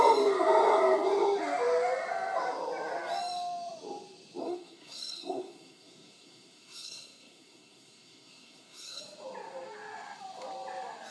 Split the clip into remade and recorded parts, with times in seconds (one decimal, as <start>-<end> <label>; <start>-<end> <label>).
0.0-4.4 recorded; 4.4-9.0 remade; 9.0-11.1 recorded